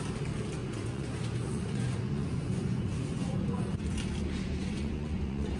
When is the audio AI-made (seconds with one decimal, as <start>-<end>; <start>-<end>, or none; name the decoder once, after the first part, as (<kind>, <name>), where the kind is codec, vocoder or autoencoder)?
0.6-4.0 (vocoder, Vocos); 4.6-5.6